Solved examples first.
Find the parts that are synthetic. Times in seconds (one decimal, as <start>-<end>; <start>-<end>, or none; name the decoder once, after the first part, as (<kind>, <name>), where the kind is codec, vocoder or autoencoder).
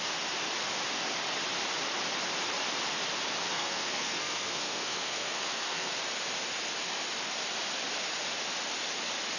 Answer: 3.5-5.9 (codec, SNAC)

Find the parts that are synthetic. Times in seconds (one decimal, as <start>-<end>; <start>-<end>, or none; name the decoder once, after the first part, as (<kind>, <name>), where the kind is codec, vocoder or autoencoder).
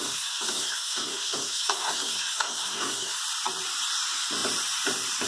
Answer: 0.0-3.2 (codec, SNAC)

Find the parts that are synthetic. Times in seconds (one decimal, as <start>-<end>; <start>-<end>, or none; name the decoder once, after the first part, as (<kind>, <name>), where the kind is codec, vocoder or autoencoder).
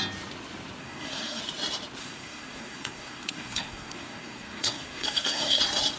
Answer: 0.8-1.4 (codec, SNAC); 2.0-5.6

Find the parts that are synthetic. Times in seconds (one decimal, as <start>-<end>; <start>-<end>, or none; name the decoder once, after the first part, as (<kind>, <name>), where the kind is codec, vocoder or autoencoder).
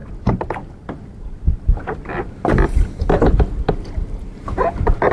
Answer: none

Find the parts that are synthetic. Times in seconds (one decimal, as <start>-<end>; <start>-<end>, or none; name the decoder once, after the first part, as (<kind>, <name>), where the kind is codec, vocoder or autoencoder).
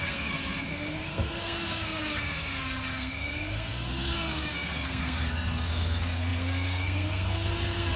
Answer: 0.0-8.0 (codec, SNAC)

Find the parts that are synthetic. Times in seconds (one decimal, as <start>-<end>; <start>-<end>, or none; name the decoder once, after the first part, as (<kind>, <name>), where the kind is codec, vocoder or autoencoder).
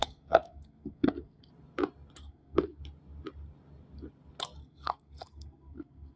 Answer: 0.0-1.5 (codec, SNAC); 2.2-2.8; 4.6-6.2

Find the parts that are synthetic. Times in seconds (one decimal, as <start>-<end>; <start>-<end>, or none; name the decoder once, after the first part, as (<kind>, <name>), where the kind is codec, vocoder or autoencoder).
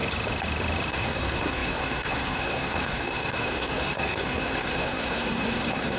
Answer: 0.9-6.0 (codec, SNAC)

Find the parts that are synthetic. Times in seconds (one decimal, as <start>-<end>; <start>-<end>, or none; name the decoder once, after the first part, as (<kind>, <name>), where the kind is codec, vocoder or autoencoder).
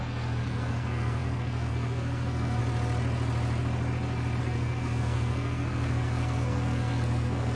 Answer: 0.0-2.6 (codec, SNAC); 4.4-7.6